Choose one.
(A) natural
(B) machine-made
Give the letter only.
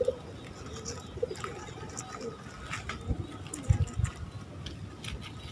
A